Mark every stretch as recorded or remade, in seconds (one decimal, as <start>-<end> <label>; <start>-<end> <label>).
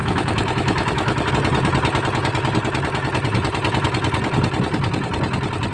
0.0-1.3 remade; 1.3-5.7 recorded